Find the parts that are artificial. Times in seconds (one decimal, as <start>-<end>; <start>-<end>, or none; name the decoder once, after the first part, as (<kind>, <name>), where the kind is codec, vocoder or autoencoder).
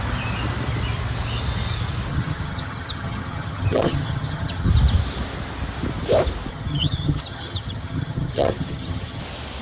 2.1-4.7 (vocoder, HiFi-GAN); 6.5-9.2